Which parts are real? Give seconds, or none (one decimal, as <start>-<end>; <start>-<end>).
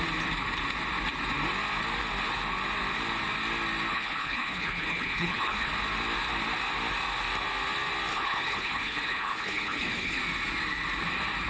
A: 0.0-3.9; 5.7-8.1; 10.2-11.5